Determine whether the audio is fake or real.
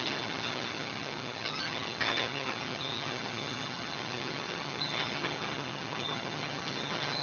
fake